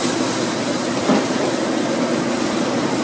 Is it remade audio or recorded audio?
recorded